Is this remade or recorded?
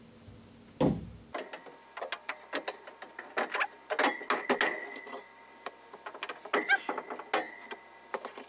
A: recorded